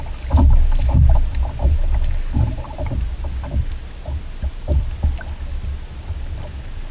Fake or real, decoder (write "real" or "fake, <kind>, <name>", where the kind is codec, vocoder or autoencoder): real